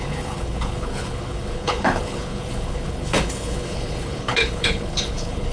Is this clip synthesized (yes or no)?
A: yes